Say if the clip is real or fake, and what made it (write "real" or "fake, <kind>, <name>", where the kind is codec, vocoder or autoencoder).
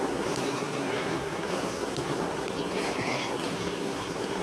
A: fake, codec, SNAC